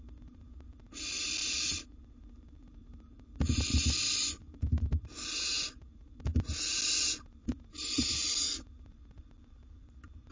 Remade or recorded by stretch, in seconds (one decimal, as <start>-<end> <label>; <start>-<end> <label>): 0.0-10.3 recorded